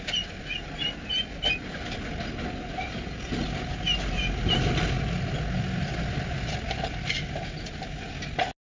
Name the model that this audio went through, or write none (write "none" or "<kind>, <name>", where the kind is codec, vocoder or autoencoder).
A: none